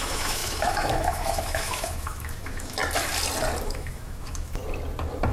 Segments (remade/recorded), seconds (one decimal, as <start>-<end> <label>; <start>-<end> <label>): 0.0-2.8 remade; 2.8-3.6 recorded; 3.6-4.6 remade; 4.6-5.3 recorded